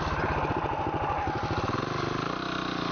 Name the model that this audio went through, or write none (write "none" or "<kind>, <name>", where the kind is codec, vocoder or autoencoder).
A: none